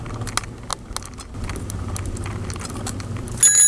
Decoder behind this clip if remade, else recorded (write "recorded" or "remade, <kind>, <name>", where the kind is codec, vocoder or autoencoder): recorded